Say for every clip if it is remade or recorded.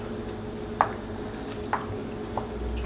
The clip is recorded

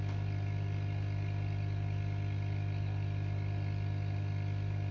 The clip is recorded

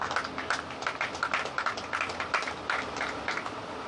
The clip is recorded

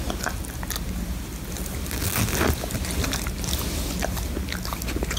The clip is recorded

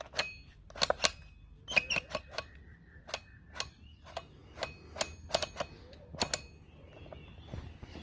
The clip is recorded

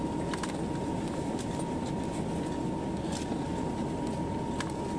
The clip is recorded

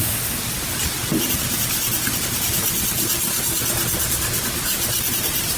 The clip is recorded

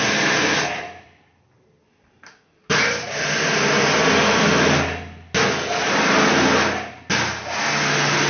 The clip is recorded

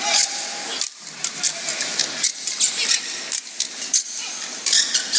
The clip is recorded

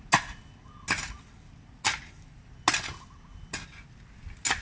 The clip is recorded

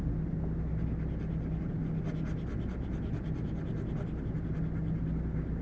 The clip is recorded